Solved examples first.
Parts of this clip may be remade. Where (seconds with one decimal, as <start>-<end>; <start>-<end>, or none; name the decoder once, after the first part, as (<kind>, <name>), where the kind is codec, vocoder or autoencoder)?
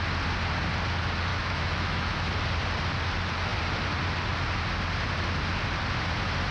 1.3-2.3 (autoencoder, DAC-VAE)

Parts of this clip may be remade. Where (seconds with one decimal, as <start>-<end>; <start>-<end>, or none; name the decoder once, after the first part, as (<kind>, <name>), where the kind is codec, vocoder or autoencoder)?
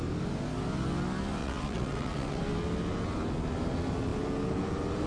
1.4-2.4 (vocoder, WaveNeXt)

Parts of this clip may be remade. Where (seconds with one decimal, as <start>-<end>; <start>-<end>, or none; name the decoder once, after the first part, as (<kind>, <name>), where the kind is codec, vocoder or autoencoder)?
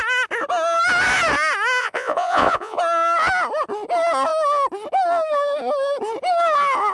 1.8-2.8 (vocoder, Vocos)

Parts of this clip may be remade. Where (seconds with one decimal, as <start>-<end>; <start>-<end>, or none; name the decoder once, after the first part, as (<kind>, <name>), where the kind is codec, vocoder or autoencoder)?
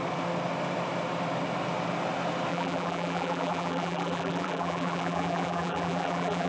2.5-6.5 (vocoder, BigVGAN v2)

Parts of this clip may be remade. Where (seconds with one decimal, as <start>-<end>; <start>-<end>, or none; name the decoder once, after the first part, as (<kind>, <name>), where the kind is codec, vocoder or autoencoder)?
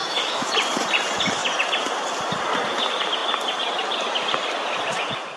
0.0-0.5 (autoencoder, DAC-VAE)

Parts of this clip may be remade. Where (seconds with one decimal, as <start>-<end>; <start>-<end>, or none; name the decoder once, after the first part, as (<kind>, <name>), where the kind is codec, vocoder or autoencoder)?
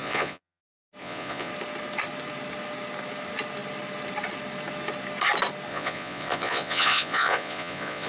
0.0-0.6 (vocoder, Vocos); 1.0-1.5; 5.7-8.1